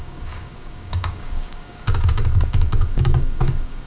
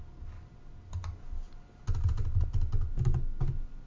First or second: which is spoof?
first